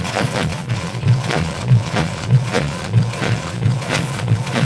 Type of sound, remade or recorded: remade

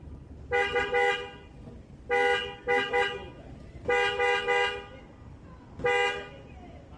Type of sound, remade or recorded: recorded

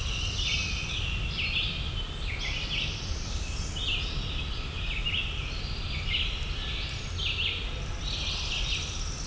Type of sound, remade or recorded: recorded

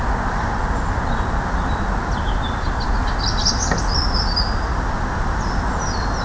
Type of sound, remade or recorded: recorded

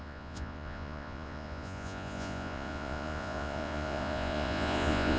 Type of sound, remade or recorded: remade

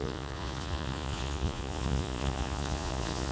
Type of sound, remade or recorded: remade